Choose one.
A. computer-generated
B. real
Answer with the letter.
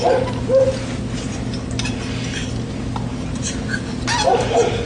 B